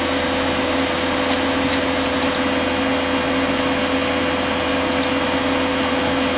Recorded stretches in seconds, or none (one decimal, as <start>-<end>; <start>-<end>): 0.0-6.4